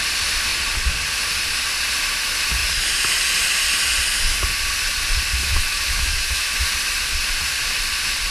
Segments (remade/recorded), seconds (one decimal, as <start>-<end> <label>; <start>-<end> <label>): 0.0-5.4 recorded; 5.4-6.6 remade; 6.6-8.3 recorded